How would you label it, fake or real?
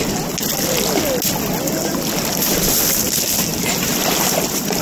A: real